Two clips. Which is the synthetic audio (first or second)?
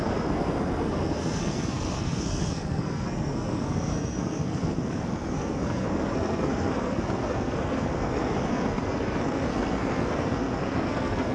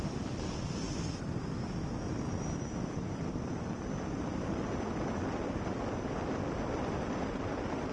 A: first